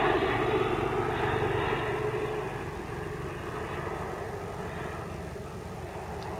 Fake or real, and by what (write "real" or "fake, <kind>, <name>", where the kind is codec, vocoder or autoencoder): real